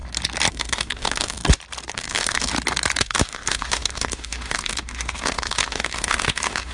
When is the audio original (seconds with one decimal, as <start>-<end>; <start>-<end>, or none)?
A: 0.0-0.5; 1.4-1.9; 2.5-3.0